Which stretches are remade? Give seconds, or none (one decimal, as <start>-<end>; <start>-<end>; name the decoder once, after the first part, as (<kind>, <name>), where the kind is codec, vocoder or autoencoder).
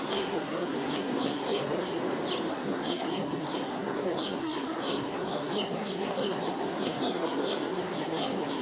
0.0-2.0 (codec, SNAC); 2.5-8.6